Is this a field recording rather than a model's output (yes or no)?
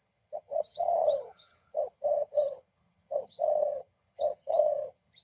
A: no